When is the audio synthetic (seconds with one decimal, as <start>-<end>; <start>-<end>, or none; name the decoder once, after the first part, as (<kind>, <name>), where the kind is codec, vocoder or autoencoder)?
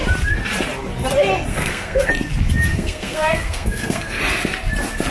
1.5-2.1 (codec, SNAC); 2.7-4.2